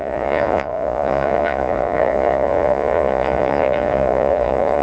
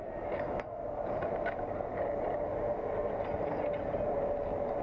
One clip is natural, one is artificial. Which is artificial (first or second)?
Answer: first